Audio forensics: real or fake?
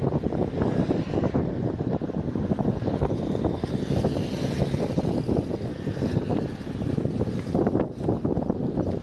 real